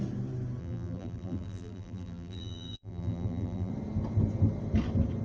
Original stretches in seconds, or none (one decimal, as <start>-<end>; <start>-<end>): 0.0-0.6; 3.7-5.2